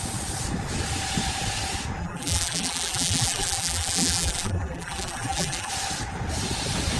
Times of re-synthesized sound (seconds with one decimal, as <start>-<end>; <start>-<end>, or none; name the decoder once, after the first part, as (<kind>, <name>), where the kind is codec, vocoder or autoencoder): 2.0-5.7 (vocoder, BigVGAN v2)